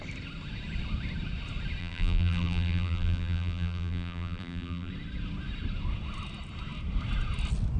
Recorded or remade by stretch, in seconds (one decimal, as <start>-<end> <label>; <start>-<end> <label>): 0.0-1.8 recorded; 1.8-4.9 remade; 4.9-7.8 recorded